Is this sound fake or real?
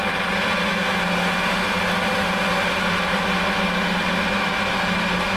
real